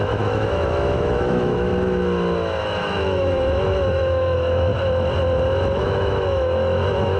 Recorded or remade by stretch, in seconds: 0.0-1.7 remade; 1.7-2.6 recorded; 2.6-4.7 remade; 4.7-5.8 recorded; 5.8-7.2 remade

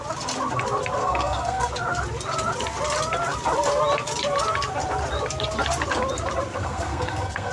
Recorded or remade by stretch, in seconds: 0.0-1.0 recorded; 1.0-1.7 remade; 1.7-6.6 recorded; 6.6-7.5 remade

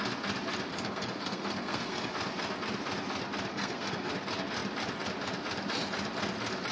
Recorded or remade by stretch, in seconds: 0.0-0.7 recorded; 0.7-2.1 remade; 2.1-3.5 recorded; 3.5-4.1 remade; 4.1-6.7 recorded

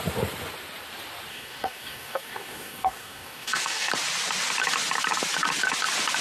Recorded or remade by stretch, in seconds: 0.0-1.3 recorded; 1.3-3.9 remade; 3.9-6.2 recorded

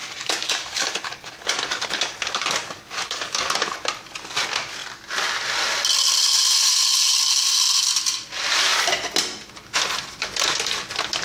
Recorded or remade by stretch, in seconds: 0.0-3.5 remade; 3.5-11.2 recorded

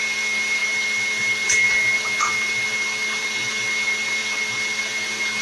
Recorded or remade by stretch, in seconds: 0.0-5.4 recorded

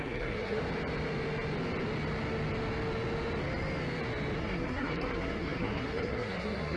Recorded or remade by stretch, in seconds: 0.0-0.6 remade; 0.6-4.4 recorded; 4.4-6.8 remade